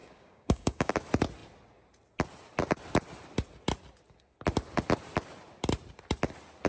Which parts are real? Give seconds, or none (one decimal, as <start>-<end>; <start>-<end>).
0.9-6.7